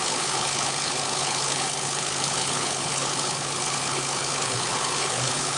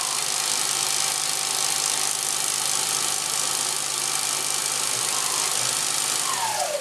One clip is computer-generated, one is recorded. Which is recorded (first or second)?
second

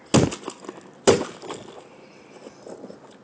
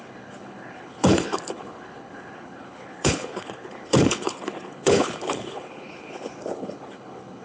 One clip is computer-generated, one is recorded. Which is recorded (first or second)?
first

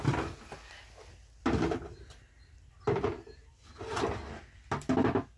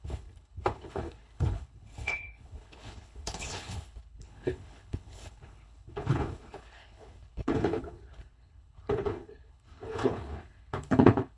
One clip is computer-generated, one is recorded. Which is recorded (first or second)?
first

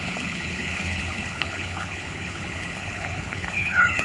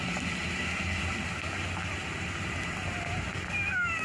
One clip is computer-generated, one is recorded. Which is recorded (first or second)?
second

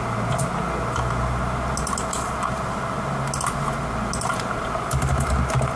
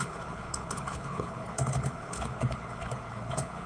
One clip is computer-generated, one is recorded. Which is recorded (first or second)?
first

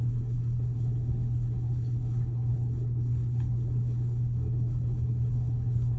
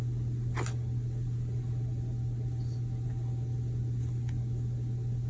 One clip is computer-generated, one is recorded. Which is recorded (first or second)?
second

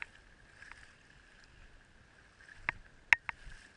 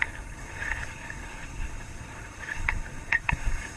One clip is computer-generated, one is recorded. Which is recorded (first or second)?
first